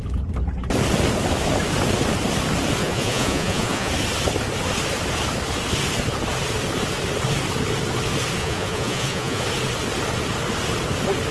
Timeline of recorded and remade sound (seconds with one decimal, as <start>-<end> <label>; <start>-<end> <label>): 0.0-2.8 recorded; 2.8-3.9 remade; 3.9-8.4 recorded; 8.4-9.4 remade; 9.4-11.3 recorded